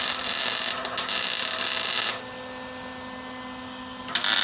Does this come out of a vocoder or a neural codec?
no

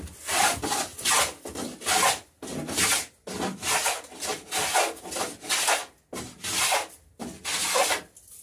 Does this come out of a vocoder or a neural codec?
no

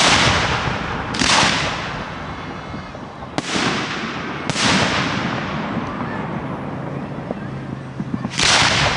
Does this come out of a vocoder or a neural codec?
no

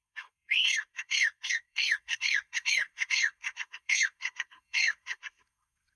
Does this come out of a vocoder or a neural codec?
yes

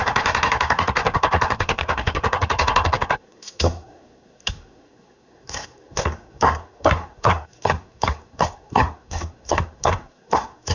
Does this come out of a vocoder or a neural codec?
yes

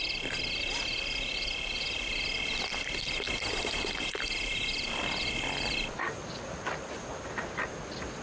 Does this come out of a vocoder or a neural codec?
no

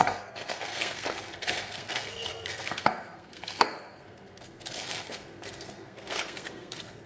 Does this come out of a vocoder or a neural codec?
yes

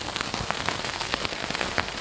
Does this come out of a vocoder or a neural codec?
yes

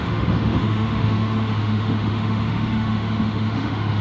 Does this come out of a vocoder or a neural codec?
yes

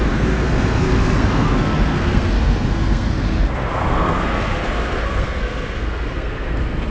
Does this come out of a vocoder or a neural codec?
yes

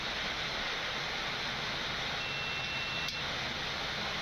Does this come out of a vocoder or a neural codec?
no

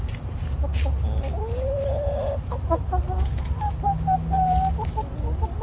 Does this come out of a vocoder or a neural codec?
no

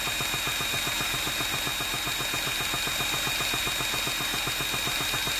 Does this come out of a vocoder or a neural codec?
no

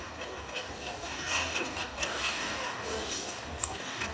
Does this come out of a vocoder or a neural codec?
yes